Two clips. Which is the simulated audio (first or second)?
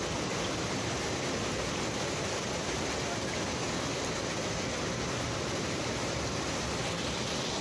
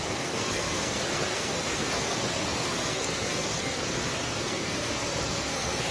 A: second